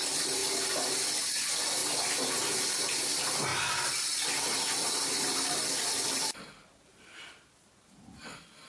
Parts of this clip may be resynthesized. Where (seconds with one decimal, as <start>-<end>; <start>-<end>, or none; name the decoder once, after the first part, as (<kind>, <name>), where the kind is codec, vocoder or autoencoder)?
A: none